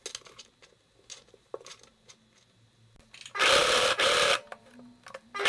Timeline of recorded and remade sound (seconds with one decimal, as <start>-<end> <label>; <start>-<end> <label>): 0.0-3.6 recorded; 3.6-4.3 remade; 4.3-5.5 recorded